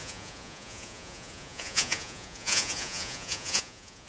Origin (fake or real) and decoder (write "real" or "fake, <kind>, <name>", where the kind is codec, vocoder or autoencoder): fake, vocoder, Vocos